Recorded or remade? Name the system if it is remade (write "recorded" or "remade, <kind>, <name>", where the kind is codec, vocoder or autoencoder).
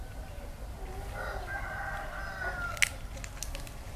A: recorded